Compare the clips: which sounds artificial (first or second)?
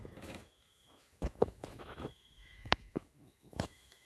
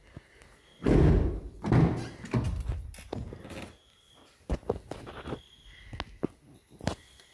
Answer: first